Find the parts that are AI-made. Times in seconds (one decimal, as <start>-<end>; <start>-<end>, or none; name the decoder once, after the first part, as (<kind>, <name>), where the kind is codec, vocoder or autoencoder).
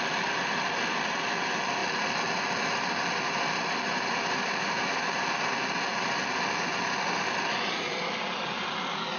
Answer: none